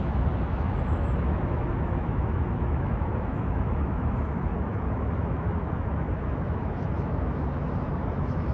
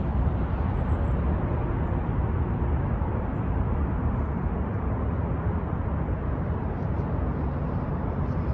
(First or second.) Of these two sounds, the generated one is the first